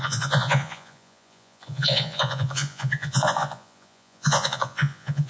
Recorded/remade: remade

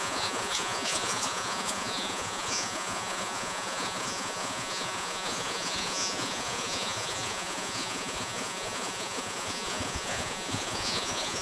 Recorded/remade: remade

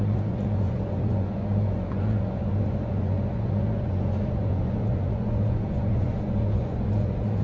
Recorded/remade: remade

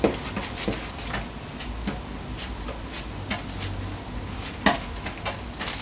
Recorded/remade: recorded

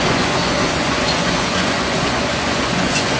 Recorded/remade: remade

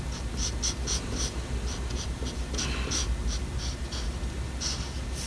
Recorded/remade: recorded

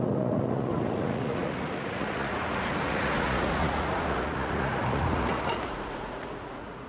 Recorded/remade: remade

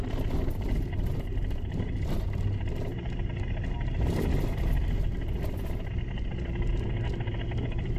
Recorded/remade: recorded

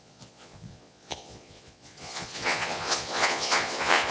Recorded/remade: remade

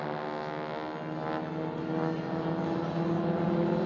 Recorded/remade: recorded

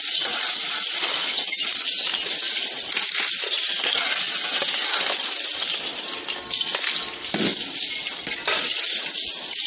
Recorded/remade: recorded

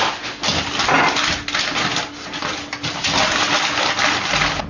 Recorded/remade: recorded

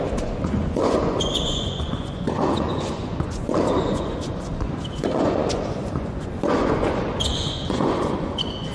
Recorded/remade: remade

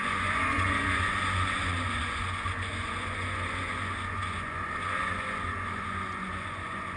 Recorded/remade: remade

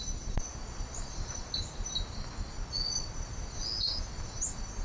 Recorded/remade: recorded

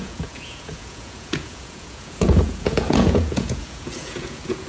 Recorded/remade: remade